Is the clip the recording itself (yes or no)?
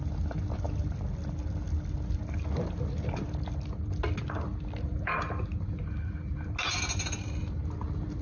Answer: yes